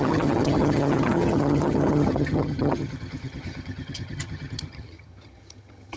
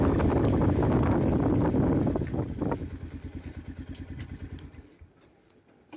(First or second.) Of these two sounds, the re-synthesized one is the first